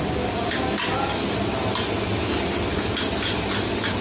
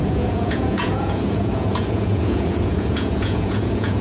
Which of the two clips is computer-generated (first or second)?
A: second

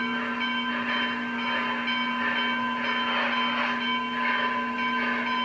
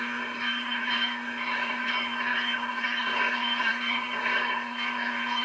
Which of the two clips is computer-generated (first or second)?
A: second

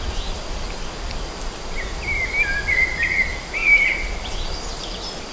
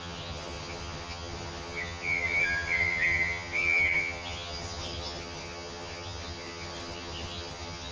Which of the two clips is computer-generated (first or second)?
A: second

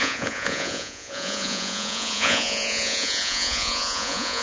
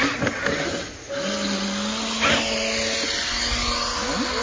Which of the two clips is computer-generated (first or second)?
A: first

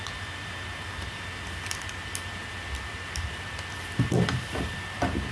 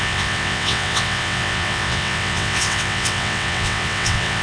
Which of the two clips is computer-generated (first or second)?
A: second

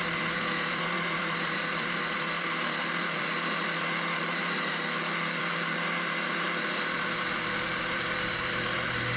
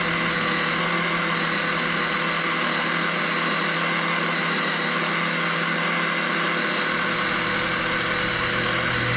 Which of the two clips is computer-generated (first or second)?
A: first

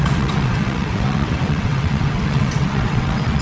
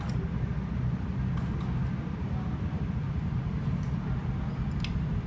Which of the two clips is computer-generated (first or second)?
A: first